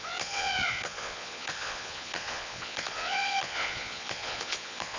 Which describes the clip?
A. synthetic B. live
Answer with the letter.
A